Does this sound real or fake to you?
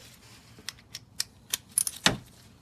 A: real